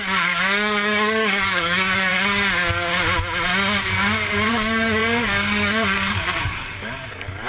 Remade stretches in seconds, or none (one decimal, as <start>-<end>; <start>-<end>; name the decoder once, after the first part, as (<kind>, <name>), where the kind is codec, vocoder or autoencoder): 0.0-2.1 (codec, DAC); 4.5-7.5